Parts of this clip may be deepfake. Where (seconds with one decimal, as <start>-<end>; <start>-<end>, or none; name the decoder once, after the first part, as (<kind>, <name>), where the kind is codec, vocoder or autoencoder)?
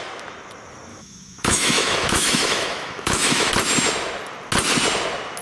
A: 0.9-3.5 (autoencoder, DAC-VAE)